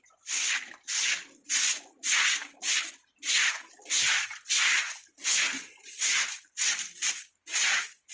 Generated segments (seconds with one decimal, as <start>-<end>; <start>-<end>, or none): 5.8-8.1